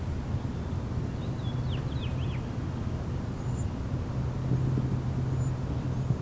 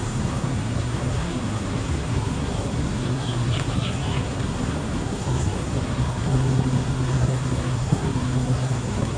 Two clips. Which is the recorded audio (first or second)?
first